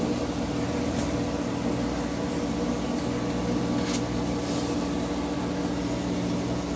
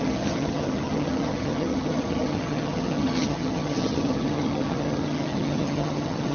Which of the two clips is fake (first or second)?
second